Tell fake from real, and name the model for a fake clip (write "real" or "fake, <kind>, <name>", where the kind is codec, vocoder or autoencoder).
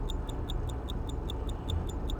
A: real